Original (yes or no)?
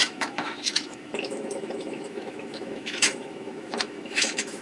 no